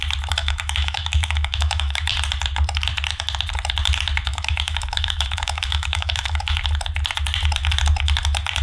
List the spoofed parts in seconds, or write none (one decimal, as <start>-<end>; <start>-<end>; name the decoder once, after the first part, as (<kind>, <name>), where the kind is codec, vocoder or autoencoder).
0.4-2.1 (autoencoder, DAC-VAE); 4.3-6.6